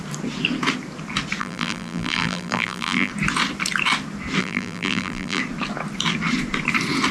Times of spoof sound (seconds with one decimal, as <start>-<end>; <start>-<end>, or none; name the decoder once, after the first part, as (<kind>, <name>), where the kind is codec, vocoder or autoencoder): 1.4-3.1 (vocoder, BigVGAN v2); 4.4-5.4